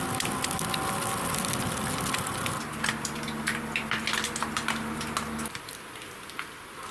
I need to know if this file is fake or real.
real